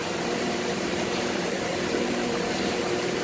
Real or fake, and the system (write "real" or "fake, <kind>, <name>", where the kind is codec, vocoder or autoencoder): fake, vocoder, BigVGAN v2